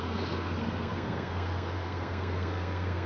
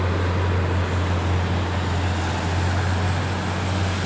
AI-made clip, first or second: first